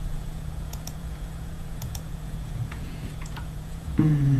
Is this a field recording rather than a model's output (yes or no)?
no